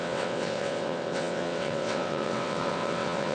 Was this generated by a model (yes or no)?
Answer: yes